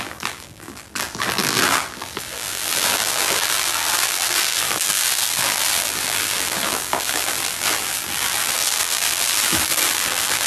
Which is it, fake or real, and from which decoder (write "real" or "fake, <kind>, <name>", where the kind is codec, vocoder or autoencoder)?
fake, vocoder, BigVGAN v2